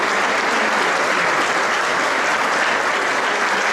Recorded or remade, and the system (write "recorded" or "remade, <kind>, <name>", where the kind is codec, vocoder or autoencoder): recorded